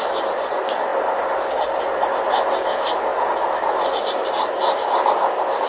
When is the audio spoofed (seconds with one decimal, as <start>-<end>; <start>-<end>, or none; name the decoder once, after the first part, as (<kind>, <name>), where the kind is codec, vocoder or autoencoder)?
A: none